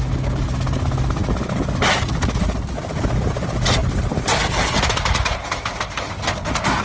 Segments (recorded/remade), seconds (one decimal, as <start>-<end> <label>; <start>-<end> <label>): 0.0-6.8 recorded